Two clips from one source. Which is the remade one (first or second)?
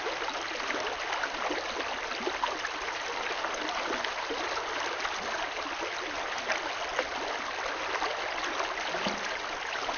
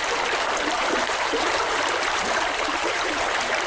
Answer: second